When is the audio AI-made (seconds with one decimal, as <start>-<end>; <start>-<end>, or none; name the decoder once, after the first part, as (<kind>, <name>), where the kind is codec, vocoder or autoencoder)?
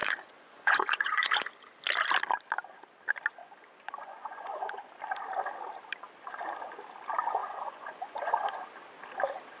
0.0-1.5 (vocoder, Vocos); 3.4-4.9; 7.4-8.6